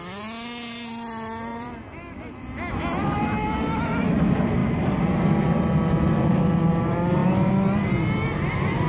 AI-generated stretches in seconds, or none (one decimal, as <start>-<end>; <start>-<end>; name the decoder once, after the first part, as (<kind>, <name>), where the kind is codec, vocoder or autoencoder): 1.5-2.3 (vocoder, BigVGAN v2); 4.6-5.2

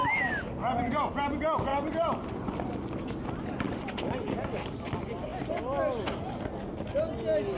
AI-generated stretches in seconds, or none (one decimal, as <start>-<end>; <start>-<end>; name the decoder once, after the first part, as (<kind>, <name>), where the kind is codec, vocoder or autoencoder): none

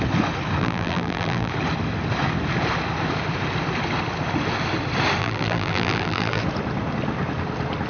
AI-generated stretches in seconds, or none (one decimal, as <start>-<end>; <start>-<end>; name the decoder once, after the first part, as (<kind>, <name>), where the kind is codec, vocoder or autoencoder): 0.6-1.5 (vocoder, BigVGAN v2); 5.2-6.4